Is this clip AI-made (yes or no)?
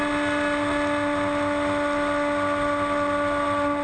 no